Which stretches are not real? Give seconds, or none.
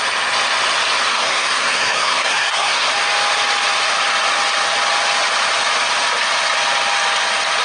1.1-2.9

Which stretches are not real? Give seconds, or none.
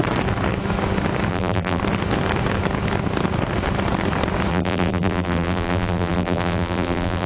1.3-1.8; 4.5-7.3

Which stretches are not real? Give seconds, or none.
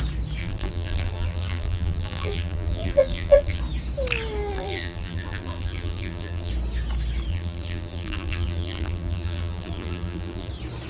0.4-3.6; 4.5-6.5; 7.3-10.5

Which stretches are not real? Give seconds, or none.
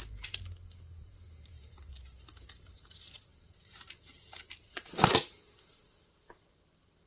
1.0-1.9; 3.3-5.4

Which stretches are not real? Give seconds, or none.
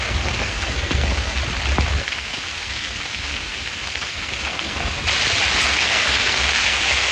0.0-1.4; 1.9-5.0; 5.6-7.1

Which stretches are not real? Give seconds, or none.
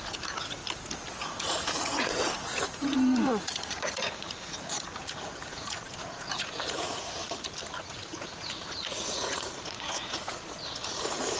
0.0-0.6; 1.1-7.2; 7.8-11.4